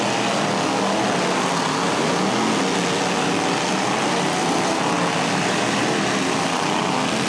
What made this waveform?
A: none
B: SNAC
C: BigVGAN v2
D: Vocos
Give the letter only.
A